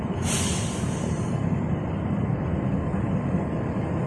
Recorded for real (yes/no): yes